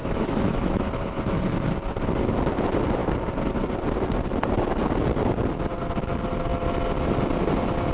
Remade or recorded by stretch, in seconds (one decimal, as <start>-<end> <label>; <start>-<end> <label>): 0.0-1.4 remade; 1.4-7.9 recorded